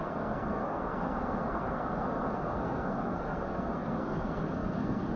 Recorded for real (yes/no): no